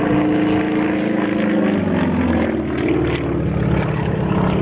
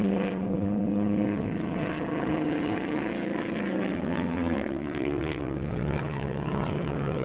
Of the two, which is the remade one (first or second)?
second